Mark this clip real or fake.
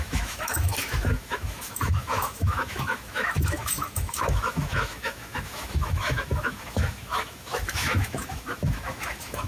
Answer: fake